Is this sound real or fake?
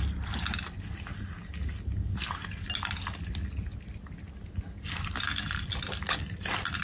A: real